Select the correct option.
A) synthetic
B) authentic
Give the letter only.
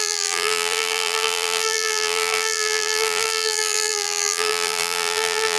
A